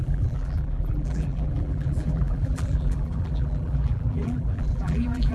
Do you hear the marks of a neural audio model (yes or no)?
yes